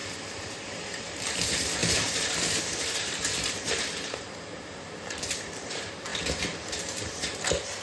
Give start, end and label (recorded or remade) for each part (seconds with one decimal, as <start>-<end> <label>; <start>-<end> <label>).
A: 0.0-7.8 remade